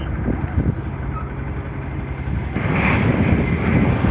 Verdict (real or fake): real